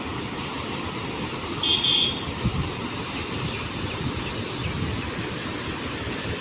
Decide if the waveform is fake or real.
real